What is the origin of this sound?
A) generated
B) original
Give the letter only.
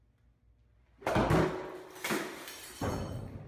B